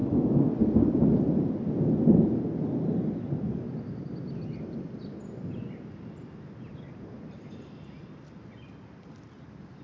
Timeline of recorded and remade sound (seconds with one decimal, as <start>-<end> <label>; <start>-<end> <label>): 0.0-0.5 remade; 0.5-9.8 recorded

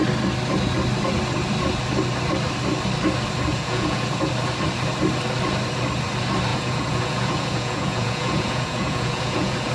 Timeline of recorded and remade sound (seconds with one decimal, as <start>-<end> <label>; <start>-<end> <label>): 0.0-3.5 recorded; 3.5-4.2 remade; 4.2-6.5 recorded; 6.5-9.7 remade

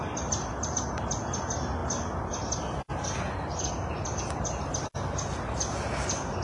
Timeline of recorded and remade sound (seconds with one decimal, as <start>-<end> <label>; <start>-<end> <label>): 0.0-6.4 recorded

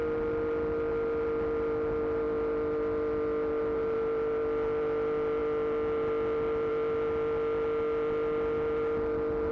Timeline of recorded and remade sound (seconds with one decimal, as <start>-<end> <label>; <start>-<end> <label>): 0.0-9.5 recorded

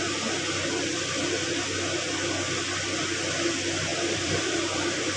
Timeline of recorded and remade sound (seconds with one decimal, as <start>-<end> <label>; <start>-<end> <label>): 0.0-3.9 recorded; 3.9-5.2 remade